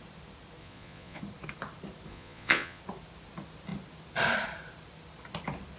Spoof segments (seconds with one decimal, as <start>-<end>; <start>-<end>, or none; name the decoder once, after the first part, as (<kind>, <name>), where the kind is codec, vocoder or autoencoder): 0.6-1.2 (vocoder, Vocos); 2.1-2.8

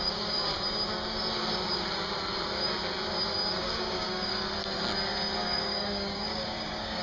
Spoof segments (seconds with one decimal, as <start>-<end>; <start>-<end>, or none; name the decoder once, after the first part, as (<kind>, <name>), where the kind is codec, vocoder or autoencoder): 0.0-0.5 (codec, DAC); 3.5-4.3; 5.4-7.0